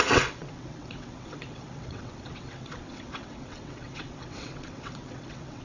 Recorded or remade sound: remade